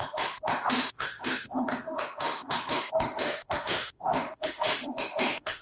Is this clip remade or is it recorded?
remade